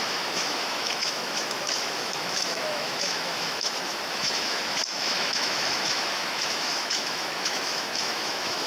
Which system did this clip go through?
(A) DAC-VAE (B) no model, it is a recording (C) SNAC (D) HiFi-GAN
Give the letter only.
A